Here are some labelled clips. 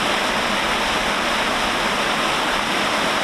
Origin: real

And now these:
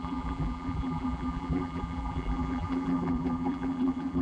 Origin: fake